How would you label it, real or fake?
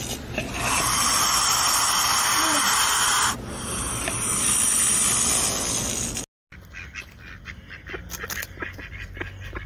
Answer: real